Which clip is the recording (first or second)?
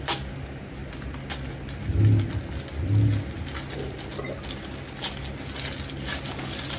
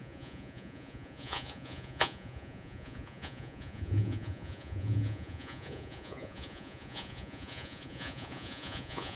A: first